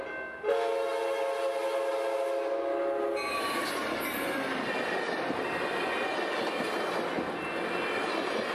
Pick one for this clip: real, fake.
real